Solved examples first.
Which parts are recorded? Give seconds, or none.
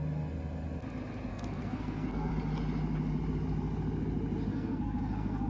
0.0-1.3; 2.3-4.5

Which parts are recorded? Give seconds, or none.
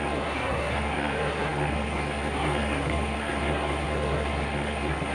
none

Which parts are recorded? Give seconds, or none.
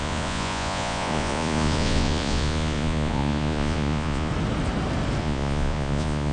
4.3-5.2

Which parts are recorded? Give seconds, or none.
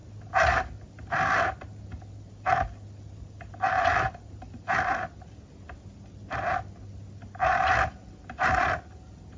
0.0-9.4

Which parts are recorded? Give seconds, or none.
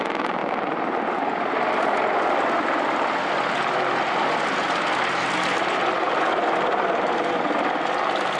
0.0-8.4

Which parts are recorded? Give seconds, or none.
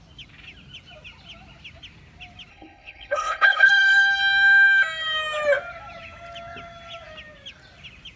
0.0-2.5; 3.7-8.2